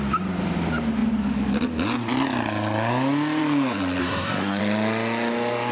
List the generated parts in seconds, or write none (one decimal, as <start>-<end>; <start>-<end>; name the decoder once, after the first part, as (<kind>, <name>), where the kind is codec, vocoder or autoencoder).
4.0-4.6 (codec, SNAC)

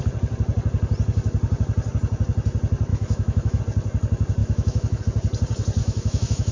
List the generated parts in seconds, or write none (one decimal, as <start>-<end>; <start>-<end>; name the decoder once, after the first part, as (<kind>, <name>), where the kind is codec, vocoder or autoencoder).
2.9-3.6 (autoencoder, DAC-VAE); 4.4-5.0; 5.8-6.5

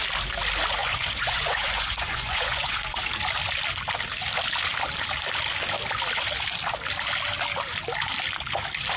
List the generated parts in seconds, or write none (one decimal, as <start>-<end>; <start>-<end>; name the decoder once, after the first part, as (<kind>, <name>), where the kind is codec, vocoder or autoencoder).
0.8-3.0 (vocoder, Vocos)

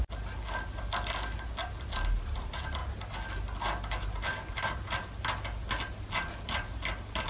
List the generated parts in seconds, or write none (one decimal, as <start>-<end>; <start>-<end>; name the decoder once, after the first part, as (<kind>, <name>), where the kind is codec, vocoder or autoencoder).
none

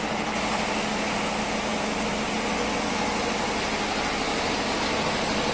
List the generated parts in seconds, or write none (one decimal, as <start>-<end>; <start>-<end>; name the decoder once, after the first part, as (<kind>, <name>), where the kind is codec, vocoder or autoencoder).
none